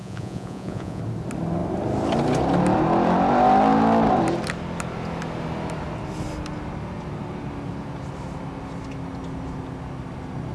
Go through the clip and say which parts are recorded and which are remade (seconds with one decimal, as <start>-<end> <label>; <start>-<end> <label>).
0.0-1.0 remade; 1.0-10.5 recorded